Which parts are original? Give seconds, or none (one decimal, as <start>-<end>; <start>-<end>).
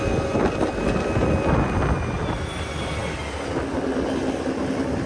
0.0-5.1